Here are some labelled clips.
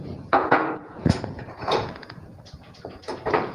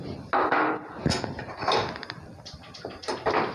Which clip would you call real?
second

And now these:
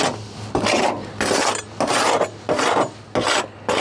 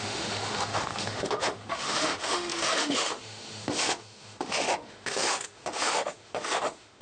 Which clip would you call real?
first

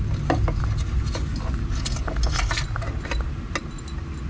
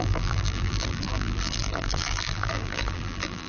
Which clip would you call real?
first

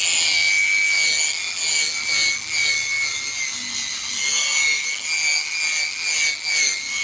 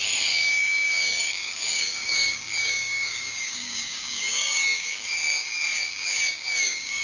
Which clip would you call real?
first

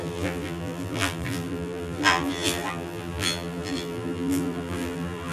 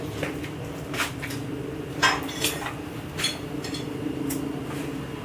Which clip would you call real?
second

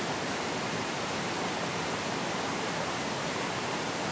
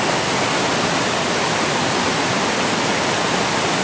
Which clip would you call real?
second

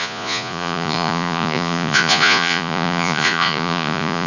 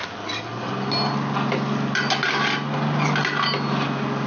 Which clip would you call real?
second